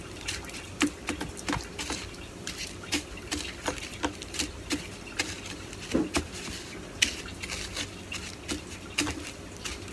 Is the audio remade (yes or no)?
no